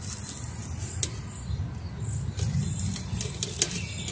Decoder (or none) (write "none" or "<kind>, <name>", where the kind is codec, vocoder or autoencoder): none